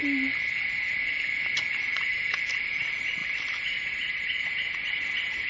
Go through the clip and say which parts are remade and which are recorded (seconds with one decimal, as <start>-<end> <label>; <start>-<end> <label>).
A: 0.0-2.1 recorded; 2.1-2.6 remade; 2.6-5.5 recorded